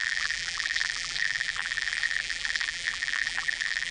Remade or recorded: remade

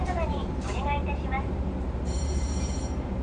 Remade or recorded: remade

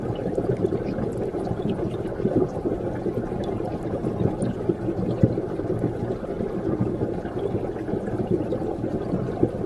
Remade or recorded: recorded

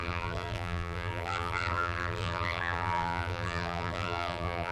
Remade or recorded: remade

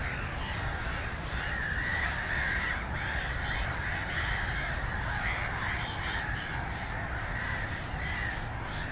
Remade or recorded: remade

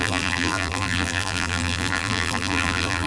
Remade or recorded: remade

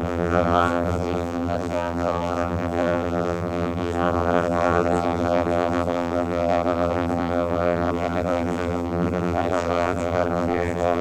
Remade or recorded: remade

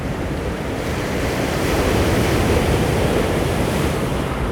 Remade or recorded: remade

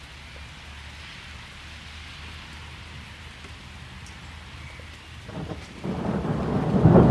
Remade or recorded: recorded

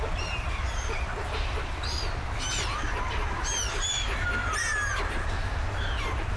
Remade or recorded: recorded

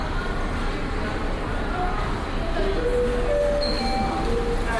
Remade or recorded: recorded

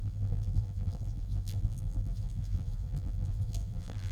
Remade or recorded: remade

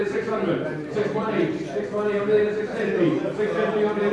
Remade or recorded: remade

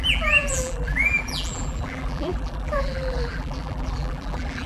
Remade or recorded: remade